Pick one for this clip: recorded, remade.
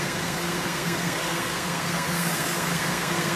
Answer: remade